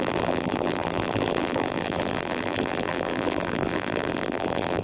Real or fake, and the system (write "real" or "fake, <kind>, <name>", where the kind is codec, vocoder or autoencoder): fake, vocoder, BigVGAN v2